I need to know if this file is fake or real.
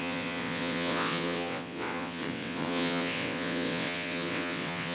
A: fake